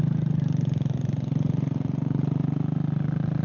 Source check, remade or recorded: recorded